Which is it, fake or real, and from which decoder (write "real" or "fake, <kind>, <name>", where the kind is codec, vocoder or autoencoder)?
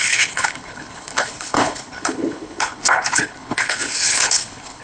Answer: fake, codec, HILCodec